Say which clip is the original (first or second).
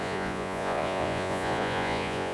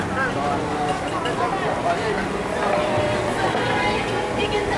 second